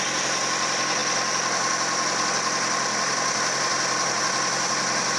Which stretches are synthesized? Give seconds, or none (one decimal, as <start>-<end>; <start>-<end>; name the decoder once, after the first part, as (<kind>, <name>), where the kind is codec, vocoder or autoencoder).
none